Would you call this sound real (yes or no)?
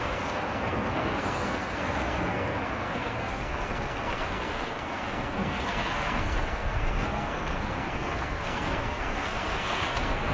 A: no